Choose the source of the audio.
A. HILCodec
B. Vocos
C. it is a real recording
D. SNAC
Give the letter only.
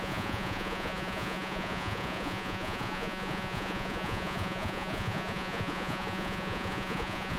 B